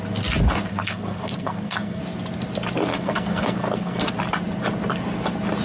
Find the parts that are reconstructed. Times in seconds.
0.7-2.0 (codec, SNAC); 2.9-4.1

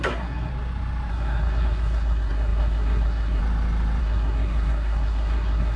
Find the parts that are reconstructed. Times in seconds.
0.0-0.5 (codec, SNAC); 1.1-3.4; 4.0-5.8

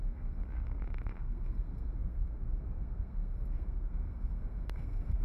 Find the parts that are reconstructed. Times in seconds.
0.0-5.2 (codec, SNAC)